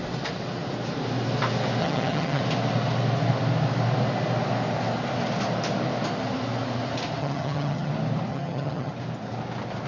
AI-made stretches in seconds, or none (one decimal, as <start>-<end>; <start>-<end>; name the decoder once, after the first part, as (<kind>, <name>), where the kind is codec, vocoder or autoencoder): 1.8-2.4 (vocoder, HiFi-GAN); 7.2-7.9; 8.3-8.9